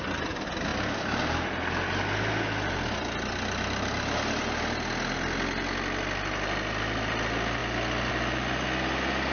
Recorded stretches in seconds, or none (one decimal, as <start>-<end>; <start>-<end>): 0.0-9.3